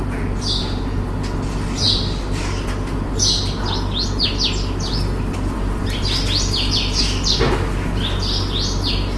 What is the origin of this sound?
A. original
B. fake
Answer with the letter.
A